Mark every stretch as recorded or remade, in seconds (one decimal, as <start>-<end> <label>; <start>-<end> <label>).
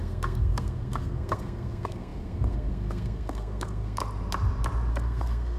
0.0-4.0 remade; 4.0-4.9 recorded; 4.9-5.6 remade